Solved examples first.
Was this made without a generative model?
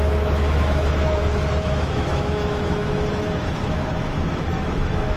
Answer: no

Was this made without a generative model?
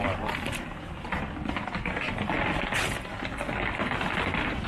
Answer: yes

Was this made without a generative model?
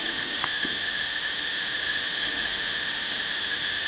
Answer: no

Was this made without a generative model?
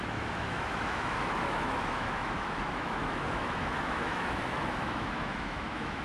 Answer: no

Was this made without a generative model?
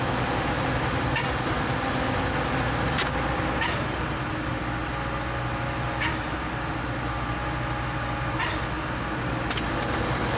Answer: yes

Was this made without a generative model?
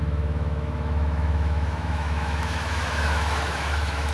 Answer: no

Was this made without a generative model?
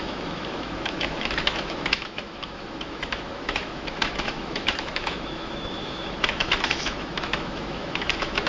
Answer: no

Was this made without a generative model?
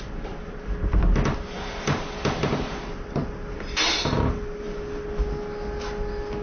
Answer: yes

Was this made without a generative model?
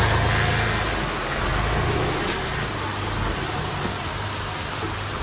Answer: yes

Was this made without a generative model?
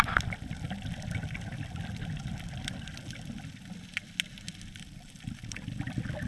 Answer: yes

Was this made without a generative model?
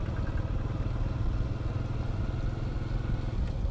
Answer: yes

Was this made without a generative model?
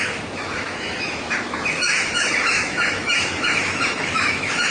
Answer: no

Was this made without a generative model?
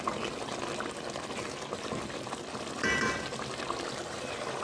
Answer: yes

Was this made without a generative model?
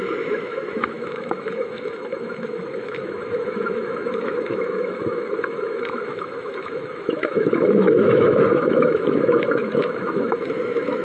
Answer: no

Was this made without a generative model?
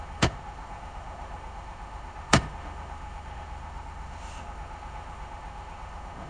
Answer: no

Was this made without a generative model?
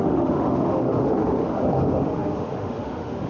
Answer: no